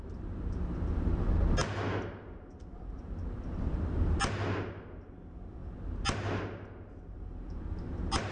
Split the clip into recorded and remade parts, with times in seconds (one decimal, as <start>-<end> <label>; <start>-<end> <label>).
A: 0.0-8.3 recorded